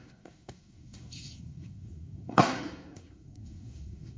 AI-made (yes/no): yes